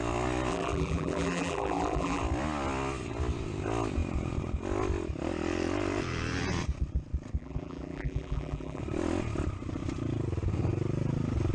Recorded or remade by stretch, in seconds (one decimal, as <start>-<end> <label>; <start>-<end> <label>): 0.0-0.5 recorded; 0.5-2.2 remade; 2.2-7.4 recorded; 7.4-8.8 remade; 8.8-11.5 recorded

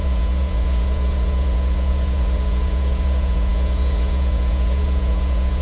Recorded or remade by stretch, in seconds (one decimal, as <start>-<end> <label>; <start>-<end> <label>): 0.0-5.6 remade

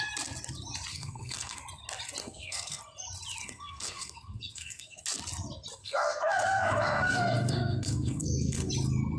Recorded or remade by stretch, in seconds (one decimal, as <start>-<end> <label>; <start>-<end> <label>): 0.0-0.9 recorded; 0.9-1.6 remade; 1.6-2.2 recorded; 2.2-2.8 remade; 2.8-3.4 recorded; 3.4-5.0 remade; 5.0-5.8 recorded; 5.8-8.7 remade; 8.7-9.2 recorded

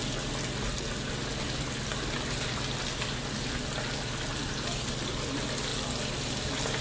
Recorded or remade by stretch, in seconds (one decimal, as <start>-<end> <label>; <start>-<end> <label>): 0.0-6.8 recorded

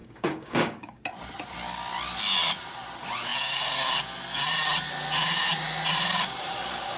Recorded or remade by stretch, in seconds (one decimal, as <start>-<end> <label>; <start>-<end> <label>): 0.0-1.0 remade; 1.0-7.0 recorded